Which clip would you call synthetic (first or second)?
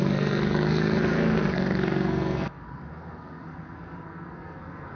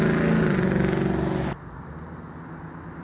first